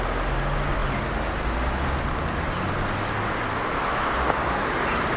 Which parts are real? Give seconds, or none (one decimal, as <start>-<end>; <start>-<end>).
0.0-5.2